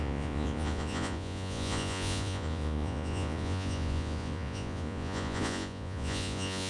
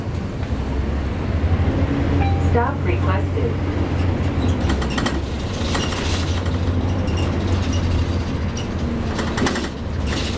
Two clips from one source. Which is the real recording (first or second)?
second